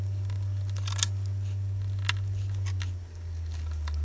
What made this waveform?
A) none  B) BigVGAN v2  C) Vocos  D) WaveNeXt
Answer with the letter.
A